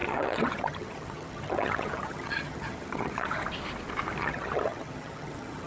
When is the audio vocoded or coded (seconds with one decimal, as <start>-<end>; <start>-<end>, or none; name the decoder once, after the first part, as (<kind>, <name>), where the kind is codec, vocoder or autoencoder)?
0.0-3.4 (vocoder, HiFi-GAN); 4.2-5.7